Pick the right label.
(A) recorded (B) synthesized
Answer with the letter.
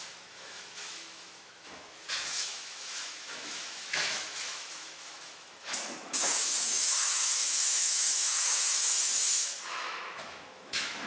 B